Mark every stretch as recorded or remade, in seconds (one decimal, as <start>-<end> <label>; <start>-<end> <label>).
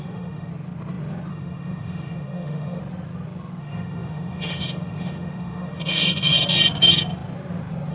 0.0-0.5 remade; 0.5-1.3 recorded; 1.3-2.8 remade; 2.8-3.6 recorded; 3.6-6.3 remade; 6.3-7.9 recorded